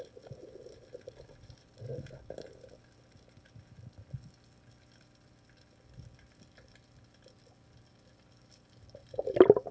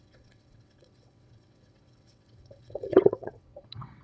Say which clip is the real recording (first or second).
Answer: first